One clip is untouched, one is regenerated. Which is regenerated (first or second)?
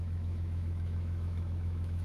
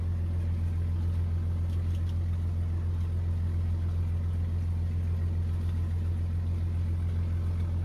first